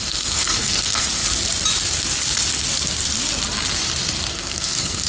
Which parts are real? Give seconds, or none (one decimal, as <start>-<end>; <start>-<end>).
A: 1.2-4.3